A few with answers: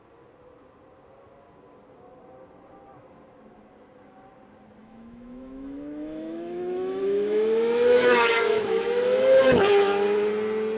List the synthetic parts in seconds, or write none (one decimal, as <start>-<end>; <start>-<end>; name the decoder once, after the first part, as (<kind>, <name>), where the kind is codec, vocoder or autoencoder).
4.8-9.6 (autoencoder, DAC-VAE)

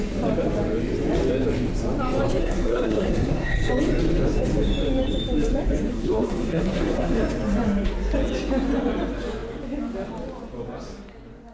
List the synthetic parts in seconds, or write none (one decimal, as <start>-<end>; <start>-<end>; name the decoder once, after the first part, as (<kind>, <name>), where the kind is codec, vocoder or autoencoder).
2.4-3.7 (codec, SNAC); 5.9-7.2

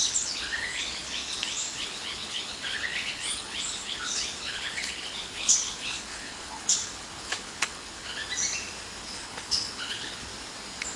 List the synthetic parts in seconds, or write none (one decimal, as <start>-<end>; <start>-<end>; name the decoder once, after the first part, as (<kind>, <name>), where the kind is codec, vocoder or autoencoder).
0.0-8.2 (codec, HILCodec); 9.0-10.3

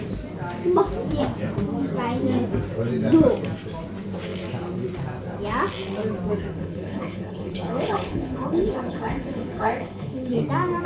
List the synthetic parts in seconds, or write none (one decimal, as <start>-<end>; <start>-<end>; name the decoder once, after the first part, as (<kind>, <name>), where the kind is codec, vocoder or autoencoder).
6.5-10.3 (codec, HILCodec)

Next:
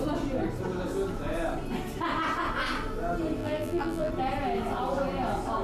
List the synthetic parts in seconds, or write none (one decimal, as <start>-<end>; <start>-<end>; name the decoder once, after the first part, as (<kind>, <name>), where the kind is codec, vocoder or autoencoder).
3.4-4.1 (vocoder, BigVGAN v2)